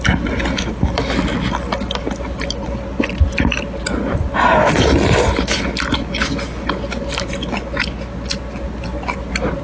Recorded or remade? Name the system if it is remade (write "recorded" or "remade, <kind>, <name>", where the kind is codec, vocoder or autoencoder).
recorded